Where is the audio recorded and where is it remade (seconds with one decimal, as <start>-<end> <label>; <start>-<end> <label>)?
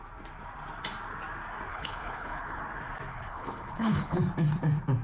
0.0-1.7 recorded; 1.7-2.6 remade; 2.6-3.1 recorded; 3.1-4.2 remade; 4.2-5.0 recorded